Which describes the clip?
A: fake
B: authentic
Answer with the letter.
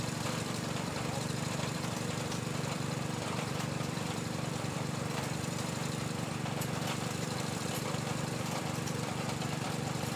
A